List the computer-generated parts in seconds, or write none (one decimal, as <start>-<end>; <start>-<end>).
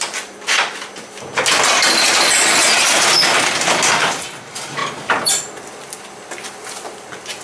none